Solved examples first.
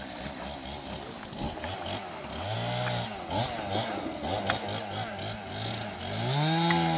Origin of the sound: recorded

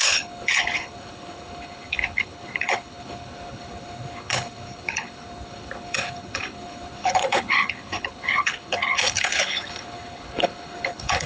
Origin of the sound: remade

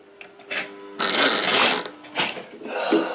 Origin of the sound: recorded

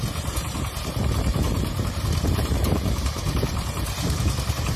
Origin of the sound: remade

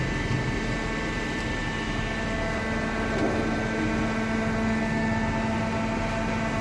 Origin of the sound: recorded